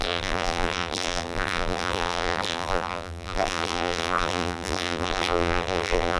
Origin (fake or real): fake